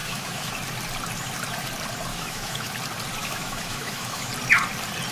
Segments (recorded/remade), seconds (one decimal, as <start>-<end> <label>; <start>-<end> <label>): 0.0-0.5 remade; 0.5-2.1 recorded; 2.1-2.7 remade; 2.7-3.2 recorded; 3.2-4.3 remade; 4.3-5.1 recorded